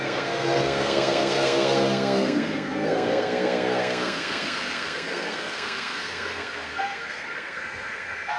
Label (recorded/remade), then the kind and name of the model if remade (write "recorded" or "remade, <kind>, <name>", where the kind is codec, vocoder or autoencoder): remade, codec, SNAC